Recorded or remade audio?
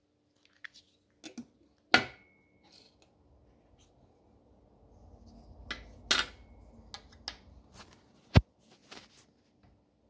recorded